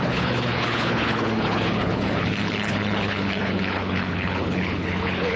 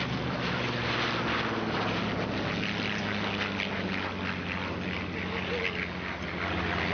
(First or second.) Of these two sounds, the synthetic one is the first